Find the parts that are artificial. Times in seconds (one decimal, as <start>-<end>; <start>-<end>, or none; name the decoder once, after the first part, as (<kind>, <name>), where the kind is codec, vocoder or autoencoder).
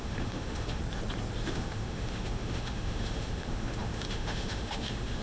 0.0-0.8 (autoencoder, DAC-VAE); 1.5-5.2